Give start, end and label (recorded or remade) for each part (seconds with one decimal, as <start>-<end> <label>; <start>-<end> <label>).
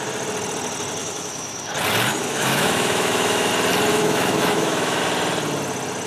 0.0-1.0 recorded; 1.0-1.7 remade; 1.7-2.1 recorded; 2.1-3.5 remade; 3.5-3.9 recorded; 3.9-5.0 remade; 5.0-6.1 recorded